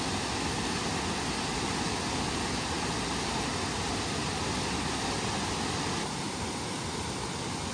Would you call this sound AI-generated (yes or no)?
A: no